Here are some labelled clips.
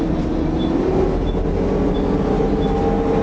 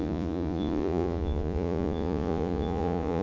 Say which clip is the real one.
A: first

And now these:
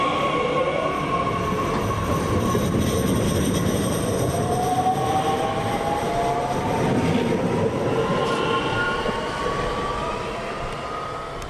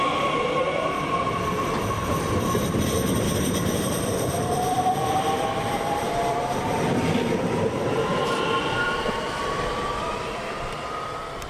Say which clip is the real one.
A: first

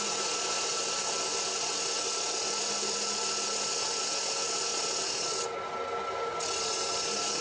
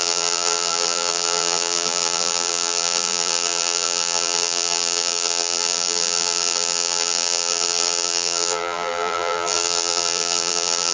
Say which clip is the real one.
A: first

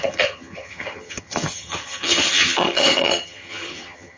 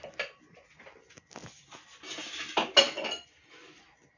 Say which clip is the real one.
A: second